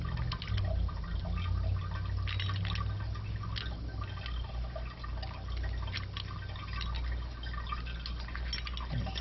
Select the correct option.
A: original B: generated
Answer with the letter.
A